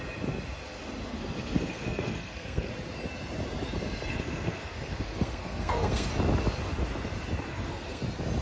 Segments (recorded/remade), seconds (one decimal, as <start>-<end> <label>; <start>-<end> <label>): 0.0-1.1 recorded; 1.1-2.7 remade; 2.7-4.1 recorded; 4.1-6.1 remade; 6.1-7.5 recorded; 7.5-8.0 remade; 8.0-8.4 recorded